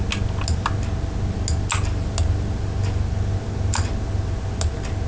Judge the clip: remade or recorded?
recorded